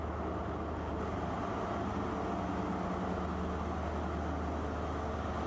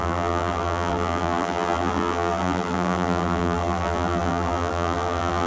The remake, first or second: second